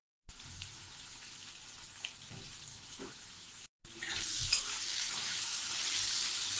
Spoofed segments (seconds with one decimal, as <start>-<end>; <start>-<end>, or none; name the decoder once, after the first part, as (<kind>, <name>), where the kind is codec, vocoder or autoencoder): 0.0-1.5 (autoencoder, DAC-VAE); 2.7-3.7; 4.3-5.7